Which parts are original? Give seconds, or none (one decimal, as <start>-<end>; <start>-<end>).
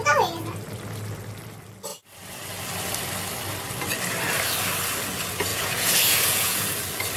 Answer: 0.0-5.5; 6.7-7.2